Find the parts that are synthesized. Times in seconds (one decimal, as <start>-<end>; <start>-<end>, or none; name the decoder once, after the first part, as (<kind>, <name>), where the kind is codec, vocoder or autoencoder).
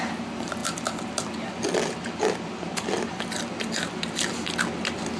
none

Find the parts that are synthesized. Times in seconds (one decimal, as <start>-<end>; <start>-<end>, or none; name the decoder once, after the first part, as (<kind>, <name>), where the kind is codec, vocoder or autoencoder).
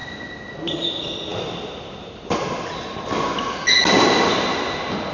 none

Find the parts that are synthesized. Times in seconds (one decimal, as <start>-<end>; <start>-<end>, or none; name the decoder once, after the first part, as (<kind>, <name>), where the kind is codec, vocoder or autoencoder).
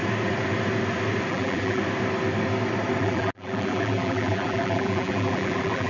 1.3-1.8 (vocoder, BigVGAN v2); 3.0-5.9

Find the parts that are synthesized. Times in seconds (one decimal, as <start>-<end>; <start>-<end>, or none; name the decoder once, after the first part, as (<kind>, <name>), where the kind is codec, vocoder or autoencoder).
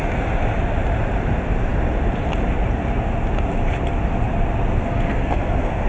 4.7-5.9 (codec, SNAC)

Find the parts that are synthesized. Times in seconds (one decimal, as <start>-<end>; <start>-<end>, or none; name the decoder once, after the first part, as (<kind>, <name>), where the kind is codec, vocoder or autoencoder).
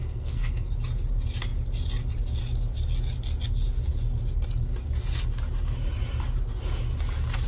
0.0-0.7 (codec, SNAC)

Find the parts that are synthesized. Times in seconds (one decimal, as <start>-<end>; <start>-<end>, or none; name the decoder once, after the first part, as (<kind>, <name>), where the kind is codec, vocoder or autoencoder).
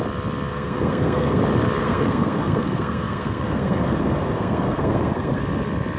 0.5-1.4 (codec, SNAC); 1.8-5.4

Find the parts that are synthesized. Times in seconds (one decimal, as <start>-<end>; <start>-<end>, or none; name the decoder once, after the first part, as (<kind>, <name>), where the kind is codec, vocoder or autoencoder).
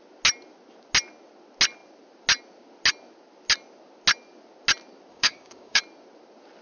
5.1-5.8 (codec, DAC)